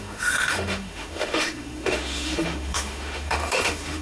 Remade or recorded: remade